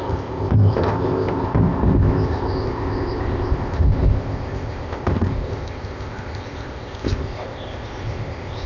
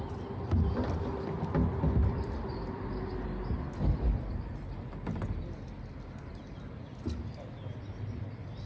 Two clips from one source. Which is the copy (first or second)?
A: first